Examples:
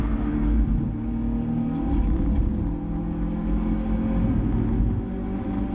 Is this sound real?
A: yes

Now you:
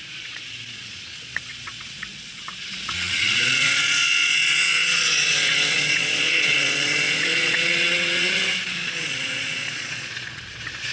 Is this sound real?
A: no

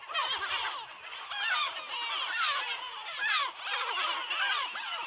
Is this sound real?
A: yes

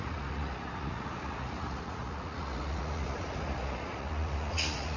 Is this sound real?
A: no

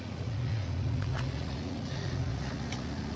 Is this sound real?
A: no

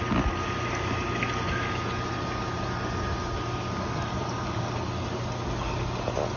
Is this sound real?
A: yes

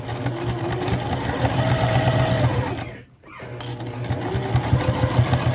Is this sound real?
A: yes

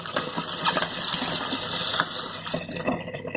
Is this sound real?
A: yes